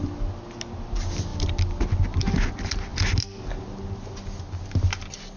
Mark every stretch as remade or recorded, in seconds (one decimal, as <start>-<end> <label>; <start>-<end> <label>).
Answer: 0.0-5.4 recorded